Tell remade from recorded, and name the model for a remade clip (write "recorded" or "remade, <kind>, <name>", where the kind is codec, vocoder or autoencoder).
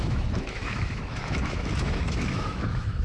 remade, autoencoder, DAC-VAE